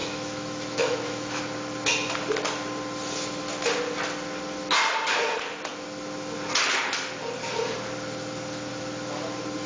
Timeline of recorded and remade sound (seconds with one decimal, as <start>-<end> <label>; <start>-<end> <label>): 0.0-1.4 remade; 1.4-9.7 recorded